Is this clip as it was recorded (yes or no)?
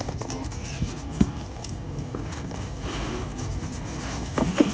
no